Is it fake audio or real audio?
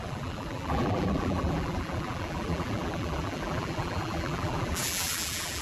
fake